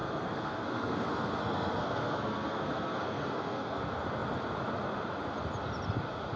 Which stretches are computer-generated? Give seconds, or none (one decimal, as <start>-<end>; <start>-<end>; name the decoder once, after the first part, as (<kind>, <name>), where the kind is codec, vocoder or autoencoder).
0.0-3.8 (codec, SNAC)